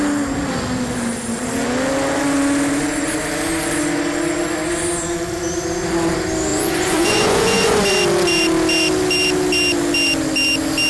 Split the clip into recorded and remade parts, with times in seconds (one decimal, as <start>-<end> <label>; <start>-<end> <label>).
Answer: 0.0-6.5 recorded; 6.5-7.8 remade; 7.8-10.9 recorded